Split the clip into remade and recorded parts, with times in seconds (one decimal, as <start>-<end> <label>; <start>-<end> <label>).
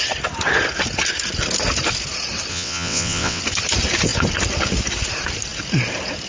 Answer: 0.0-2.5 recorded; 2.5-3.4 remade; 3.4-6.3 recorded